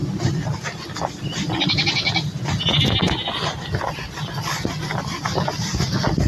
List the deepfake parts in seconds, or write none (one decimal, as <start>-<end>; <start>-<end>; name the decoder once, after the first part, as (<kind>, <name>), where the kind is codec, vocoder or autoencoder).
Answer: none